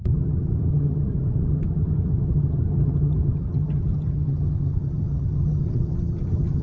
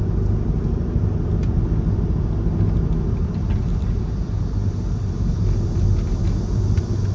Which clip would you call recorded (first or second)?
second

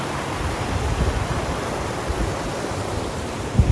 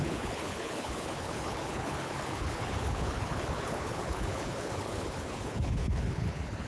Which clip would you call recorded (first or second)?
first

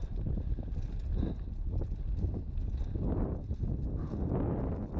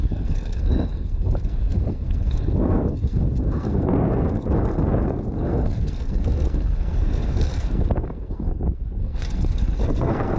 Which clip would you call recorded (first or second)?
first